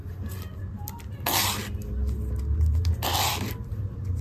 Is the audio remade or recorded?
recorded